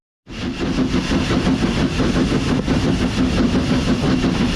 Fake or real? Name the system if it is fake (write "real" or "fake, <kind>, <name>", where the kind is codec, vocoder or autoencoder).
real